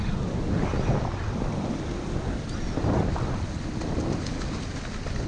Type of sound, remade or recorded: recorded